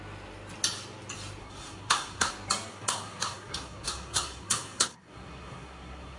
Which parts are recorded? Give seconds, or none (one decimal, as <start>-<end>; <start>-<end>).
0.0-1.4; 2.3-2.7